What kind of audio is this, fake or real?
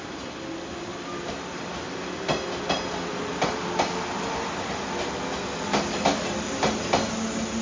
real